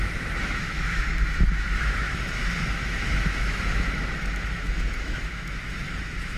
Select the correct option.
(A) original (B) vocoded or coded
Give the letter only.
B